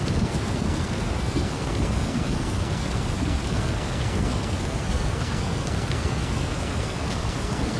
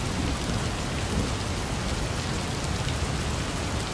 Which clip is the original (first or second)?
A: second